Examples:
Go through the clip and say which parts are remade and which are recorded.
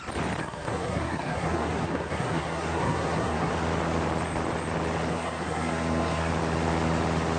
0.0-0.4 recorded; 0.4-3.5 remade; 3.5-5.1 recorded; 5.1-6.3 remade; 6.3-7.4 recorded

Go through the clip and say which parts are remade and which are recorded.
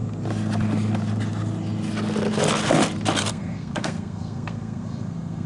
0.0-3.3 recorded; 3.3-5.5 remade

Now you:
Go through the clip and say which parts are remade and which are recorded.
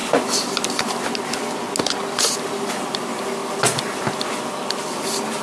0.0-5.4 recorded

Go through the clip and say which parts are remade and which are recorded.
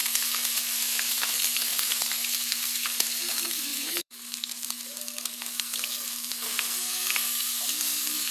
0.0-8.3 remade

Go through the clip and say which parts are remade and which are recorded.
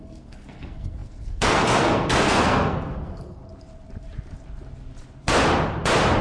0.0-3.4 remade; 3.4-6.2 recorded